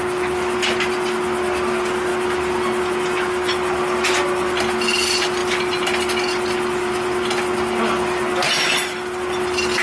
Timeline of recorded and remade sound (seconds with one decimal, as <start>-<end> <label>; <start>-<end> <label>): 0.0-9.8 recorded